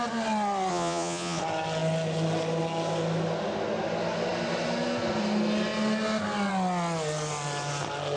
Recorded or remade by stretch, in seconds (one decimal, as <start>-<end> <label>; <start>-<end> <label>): 0.0-0.7 recorded; 0.7-1.4 remade; 1.4-8.2 recorded